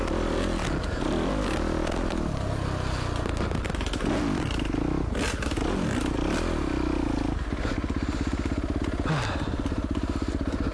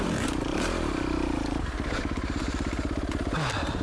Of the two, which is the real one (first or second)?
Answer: first